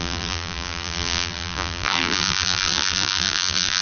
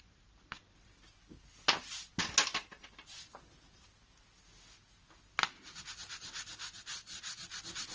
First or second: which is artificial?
first